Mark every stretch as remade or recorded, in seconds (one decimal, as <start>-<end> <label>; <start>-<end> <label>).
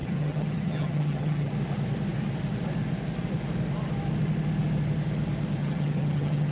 0.0-1.5 remade; 1.5-5.6 recorded; 5.6-6.5 remade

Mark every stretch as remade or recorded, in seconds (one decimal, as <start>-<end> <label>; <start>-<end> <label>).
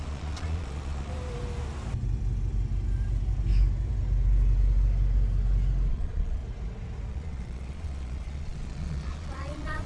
0.0-1.1 remade; 1.1-5.9 recorded; 5.9-6.4 remade; 6.4-7.1 recorded; 7.1-9.9 remade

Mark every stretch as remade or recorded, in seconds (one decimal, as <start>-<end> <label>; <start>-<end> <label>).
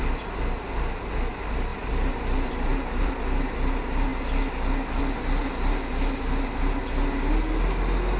0.0-1.7 recorded; 1.7-3.1 remade; 3.1-8.2 recorded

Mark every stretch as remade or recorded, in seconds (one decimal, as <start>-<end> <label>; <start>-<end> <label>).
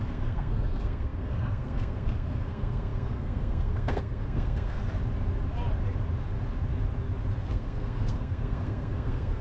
0.0-4.8 remade; 4.8-7.4 recorded; 7.4-9.4 remade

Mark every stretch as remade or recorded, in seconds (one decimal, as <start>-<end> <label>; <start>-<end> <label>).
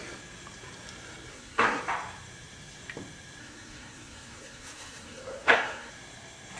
0.0-1.3 recorded; 1.3-1.8 remade; 1.8-3.4 recorded; 3.4-5.9 remade; 5.9-6.6 recorded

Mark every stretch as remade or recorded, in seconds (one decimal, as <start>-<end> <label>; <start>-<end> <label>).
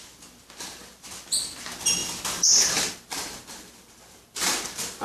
0.0-5.0 recorded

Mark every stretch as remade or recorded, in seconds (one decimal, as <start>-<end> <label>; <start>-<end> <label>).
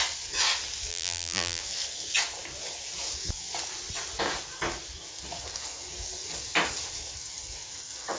0.0-0.9 recorded; 0.9-1.6 remade; 1.6-8.2 recorded